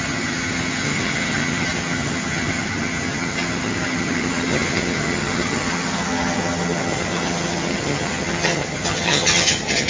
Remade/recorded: remade